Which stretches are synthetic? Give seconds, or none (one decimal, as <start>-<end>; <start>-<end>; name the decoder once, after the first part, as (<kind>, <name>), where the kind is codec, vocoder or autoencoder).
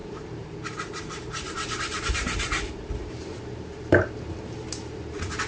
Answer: 0.0-3.3 (vocoder, BigVGAN v2)